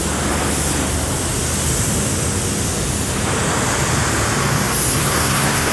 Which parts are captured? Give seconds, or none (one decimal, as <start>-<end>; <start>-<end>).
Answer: 0.0-5.0